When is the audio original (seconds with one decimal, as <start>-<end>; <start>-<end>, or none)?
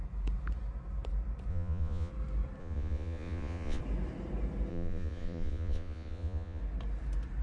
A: 0.0-1.5; 2.1-2.6; 3.8-4.7; 6.6-7.4